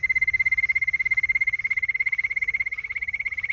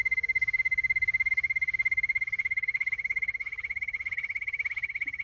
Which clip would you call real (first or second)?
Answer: first